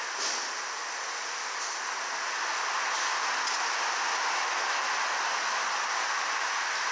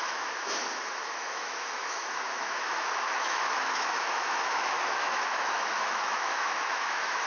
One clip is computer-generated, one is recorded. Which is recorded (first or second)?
first